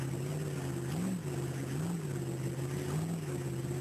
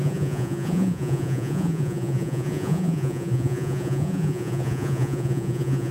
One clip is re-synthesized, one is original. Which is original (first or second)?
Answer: first